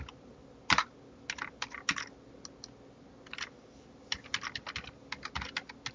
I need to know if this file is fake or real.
real